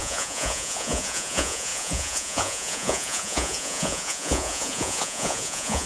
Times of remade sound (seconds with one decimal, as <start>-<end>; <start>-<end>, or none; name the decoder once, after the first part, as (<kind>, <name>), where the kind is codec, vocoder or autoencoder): 0.0-5.9 (vocoder, Vocos)